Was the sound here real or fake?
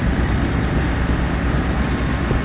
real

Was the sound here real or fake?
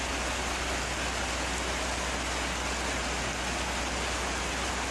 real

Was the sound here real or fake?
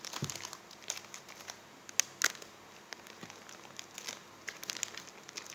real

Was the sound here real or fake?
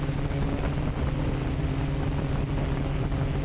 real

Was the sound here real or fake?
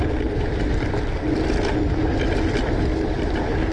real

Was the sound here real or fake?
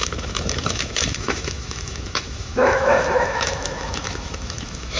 fake